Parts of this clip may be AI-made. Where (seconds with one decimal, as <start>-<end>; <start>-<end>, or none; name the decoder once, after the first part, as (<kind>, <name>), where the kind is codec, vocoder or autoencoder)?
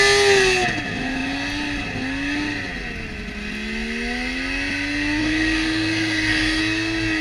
5.2-6.6 (codec, SNAC)